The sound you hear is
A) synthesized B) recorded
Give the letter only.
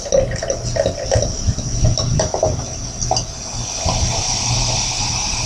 B